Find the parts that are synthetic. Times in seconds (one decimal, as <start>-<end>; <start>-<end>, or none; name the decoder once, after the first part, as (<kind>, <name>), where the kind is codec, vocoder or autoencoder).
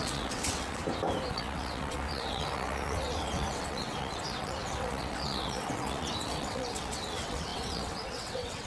0.0-0.8 (vocoder, WaveNeXt); 1.3-8.7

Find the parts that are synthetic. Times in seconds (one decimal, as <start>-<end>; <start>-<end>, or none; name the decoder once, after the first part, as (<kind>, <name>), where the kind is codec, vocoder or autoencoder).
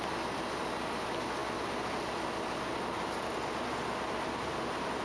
none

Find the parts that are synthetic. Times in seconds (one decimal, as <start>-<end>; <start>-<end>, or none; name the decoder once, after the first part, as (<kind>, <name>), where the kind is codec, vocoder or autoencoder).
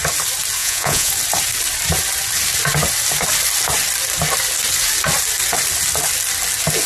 0.6-1.1 (vocoder, Vocos)